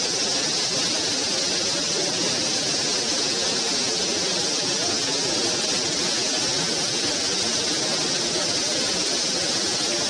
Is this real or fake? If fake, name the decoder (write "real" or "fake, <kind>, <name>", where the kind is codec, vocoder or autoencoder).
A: real